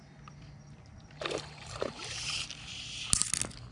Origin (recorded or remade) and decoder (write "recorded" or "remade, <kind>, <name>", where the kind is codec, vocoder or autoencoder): recorded